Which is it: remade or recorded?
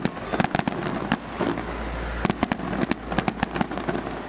recorded